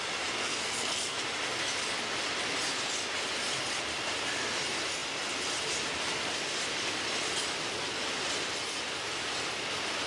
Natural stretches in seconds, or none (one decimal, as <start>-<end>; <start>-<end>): 0.0-0.4; 1.2-10.1